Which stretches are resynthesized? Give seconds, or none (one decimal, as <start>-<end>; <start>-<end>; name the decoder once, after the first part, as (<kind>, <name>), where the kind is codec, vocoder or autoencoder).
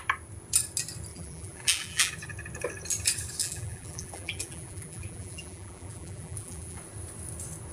1.1-2.1 (vocoder, BigVGAN v2); 3.4-6.8